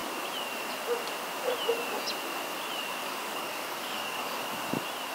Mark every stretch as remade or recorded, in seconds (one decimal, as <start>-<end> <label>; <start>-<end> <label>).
0.0-3.0 recorded; 3.0-4.4 remade; 4.4-5.1 recorded